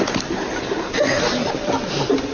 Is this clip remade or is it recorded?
recorded